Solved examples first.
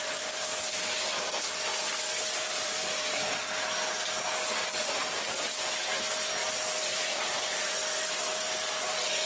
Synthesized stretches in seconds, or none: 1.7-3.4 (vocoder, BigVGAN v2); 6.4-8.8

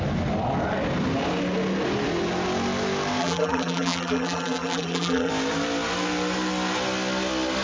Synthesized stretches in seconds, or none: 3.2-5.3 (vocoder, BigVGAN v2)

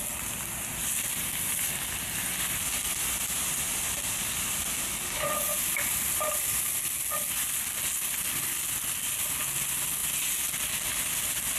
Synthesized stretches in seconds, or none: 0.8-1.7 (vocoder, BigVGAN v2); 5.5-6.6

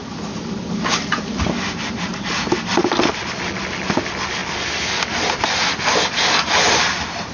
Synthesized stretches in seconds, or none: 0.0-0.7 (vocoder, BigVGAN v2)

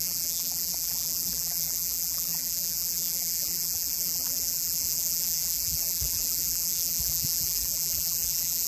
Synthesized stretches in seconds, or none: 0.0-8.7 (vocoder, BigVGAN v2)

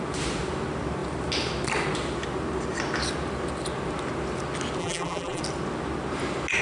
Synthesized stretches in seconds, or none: 4.8-5.4 (vocoder, BigVGAN v2)

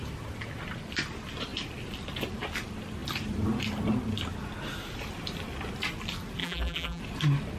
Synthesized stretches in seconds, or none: 6.4-7.0 (vocoder, BigVGAN v2)

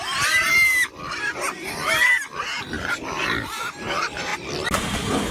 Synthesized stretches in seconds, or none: 0.0-4.3 (vocoder, BigVGAN v2)